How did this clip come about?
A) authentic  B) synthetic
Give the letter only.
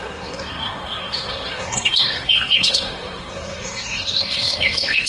B